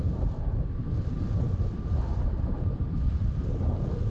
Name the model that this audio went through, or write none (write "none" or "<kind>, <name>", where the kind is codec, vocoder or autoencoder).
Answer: none